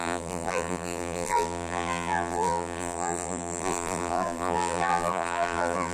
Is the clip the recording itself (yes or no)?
no